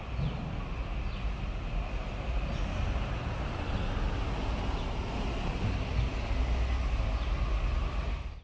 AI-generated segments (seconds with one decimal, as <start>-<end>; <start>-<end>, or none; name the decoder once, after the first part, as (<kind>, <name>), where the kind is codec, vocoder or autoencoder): none